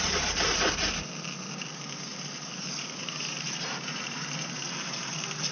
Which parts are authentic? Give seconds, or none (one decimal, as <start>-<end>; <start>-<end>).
0.0-2.1; 5.0-5.5